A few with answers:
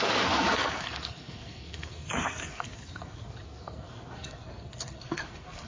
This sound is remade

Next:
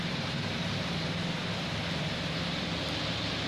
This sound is recorded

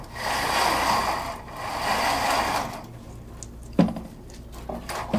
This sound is recorded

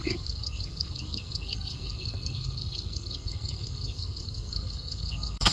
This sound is remade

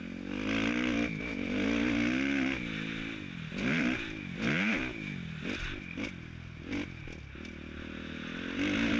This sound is recorded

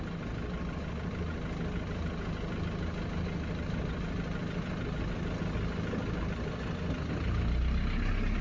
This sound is recorded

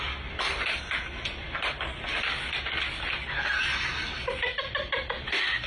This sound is recorded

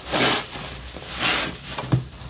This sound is recorded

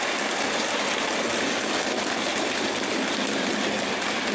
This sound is recorded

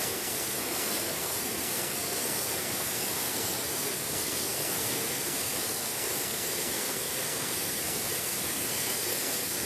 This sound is remade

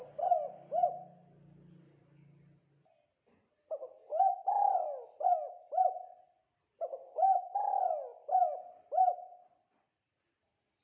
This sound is recorded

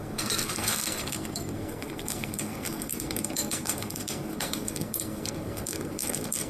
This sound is remade